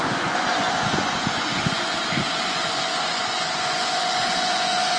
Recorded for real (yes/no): no